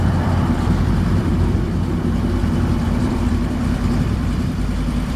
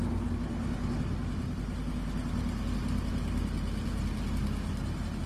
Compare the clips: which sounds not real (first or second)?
first